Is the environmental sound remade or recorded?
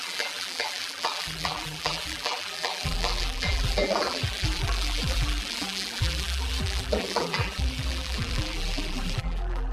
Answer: remade